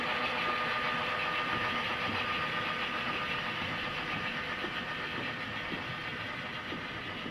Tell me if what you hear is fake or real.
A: real